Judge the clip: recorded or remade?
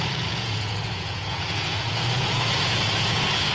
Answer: remade